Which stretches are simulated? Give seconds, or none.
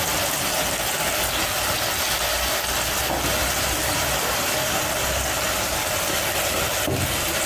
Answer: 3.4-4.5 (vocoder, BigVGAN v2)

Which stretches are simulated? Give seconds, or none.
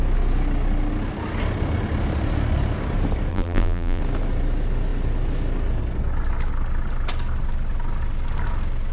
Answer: 3.3-4.0 (vocoder, BigVGAN v2)